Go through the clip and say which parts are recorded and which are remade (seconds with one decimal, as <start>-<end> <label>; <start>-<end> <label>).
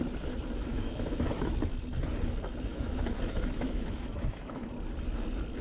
0.0-0.7 recorded; 0.7-1.5 remade; 1.5-2.7 recorded; 2.7-4.7 remade; 4.7-5.6 recorded